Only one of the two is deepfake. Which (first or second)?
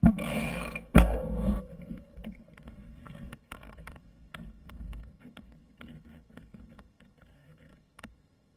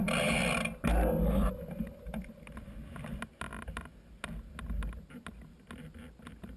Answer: first